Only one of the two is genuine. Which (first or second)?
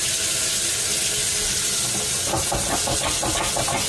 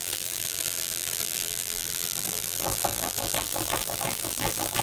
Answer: first